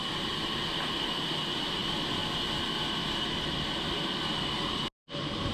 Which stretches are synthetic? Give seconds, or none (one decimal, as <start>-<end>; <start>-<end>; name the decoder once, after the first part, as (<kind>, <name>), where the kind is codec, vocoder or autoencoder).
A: none